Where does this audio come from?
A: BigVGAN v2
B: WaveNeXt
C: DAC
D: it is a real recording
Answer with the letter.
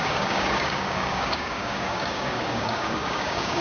C